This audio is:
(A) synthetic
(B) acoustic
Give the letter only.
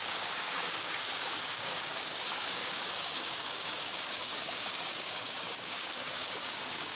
A